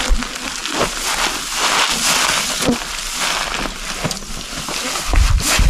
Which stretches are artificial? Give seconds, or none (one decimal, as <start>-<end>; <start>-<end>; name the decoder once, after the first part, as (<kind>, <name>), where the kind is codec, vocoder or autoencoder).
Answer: none